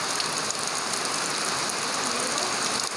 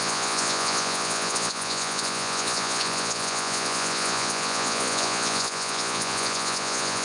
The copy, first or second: second